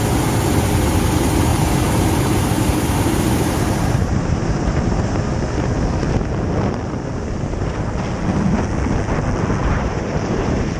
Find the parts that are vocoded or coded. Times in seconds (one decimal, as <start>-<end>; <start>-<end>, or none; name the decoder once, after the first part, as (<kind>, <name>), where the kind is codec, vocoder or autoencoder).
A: 1.5-5.2 (vocoder, BigVGAN v2); 9.6-10.8